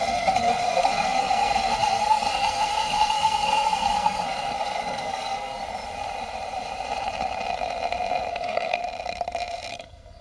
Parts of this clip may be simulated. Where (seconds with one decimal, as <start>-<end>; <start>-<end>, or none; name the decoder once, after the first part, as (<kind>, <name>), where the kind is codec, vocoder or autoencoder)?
0.0-5.6 (codec, SNAC); 8.3-8.8; 9.7-10.2